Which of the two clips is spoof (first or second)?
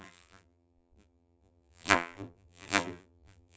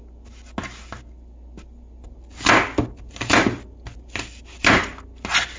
first